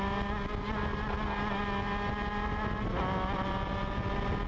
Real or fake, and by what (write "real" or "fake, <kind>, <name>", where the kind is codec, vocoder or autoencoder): real